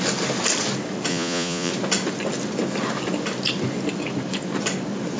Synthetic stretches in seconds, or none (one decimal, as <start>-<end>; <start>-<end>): 1.1-1.7